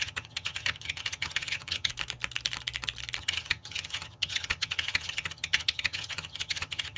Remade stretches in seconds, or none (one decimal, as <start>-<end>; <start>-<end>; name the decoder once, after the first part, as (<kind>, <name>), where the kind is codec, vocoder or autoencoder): 0.0-1.9 (vocoder, HiFi-GAN); 3.2-7.0